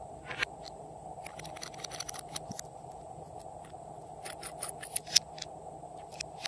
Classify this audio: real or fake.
real